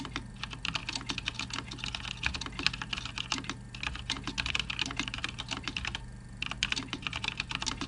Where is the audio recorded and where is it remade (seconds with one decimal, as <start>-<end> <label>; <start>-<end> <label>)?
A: 0.0-0.8 remade; 0.8-4.5 recorded; 4.5-7.9 remade